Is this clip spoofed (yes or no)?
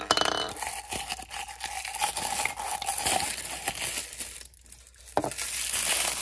no